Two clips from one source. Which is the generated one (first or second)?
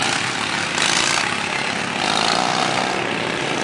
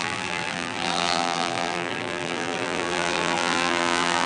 second